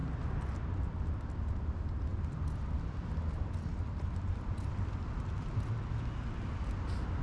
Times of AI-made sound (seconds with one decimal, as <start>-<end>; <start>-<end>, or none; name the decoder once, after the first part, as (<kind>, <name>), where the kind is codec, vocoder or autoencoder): 2.1-5.8 (vocoder, BigVGAN v2)

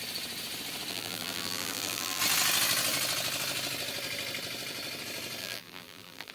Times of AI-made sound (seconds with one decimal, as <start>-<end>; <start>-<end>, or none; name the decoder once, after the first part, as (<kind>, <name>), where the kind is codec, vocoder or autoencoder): 0.9-2.2 (vocoder, BigVGAN v2); 5.4-6.3

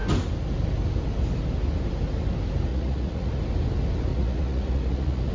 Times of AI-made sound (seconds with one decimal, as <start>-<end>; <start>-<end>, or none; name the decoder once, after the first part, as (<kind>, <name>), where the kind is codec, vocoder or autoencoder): 2.7-3.4 (vocoder, Vocos); 4.1-5.3

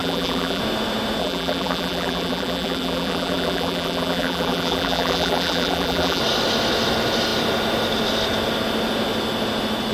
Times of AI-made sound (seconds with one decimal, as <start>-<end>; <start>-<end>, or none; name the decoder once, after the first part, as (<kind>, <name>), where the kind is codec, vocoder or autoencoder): 0.0-0.6 (vocoder, BigVGAN v2); 1.2-6.2

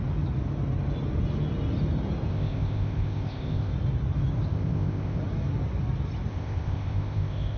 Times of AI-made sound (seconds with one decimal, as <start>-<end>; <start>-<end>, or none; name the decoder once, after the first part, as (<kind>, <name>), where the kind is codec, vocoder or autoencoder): 2.3-3.7 (codec, ZipCodec); 4.5-5.2; 6.3-7.6

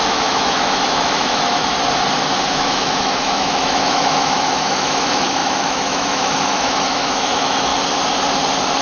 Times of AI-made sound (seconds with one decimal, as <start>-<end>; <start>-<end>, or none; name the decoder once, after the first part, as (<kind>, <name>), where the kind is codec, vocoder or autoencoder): 0.0-1.6 (autoencoder, DAC-VAE); 2.5-7.7

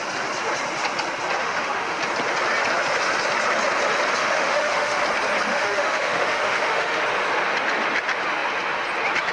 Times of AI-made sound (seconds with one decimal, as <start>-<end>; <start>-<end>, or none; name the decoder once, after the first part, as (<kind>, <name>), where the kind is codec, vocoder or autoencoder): 1.4-2.0 (autoencoder, DAC-VAE); 4.2-5.0; 5.5-7.0